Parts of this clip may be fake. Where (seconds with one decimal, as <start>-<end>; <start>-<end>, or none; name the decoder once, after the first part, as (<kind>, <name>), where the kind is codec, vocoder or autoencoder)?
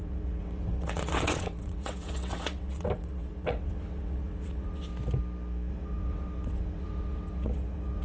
0.0-4.9 (vocoder, WaveNeXt); 5.7-8.0